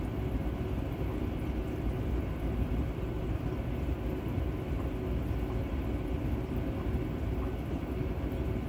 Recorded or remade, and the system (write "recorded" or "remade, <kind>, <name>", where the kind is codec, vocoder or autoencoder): recorded